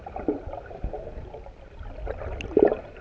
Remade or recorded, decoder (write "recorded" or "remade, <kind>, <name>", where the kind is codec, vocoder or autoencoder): recorded